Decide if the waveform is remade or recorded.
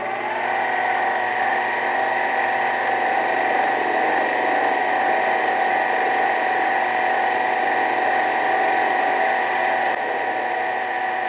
recorded